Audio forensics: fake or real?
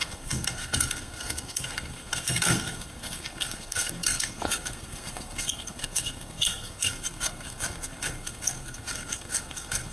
fake